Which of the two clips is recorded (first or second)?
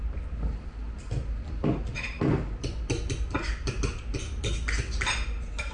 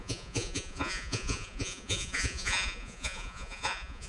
first